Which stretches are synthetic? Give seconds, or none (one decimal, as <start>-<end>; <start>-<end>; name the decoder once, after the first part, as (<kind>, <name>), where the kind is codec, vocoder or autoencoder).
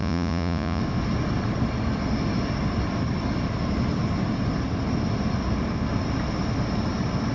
0.0-0.8 (vocoder, Vocos)